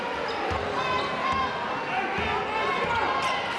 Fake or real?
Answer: real